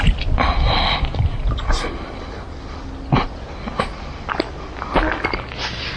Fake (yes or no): no